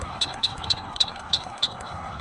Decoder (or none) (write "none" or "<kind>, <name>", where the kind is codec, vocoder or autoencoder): codec, SNAC